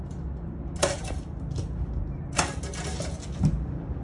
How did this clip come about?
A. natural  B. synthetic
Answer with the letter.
A